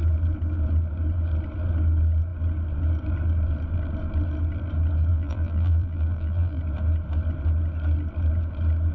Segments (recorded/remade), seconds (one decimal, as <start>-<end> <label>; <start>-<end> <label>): 0.0-5.1 recorded; 5.1-6.6 remade; 6.6-8.9 recorded